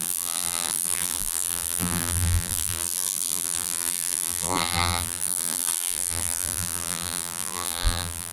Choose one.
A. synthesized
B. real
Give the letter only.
A